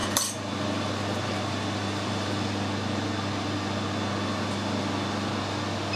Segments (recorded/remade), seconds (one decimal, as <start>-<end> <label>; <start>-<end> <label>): 0.0-2.4 remade; 2.4-6.0 recorded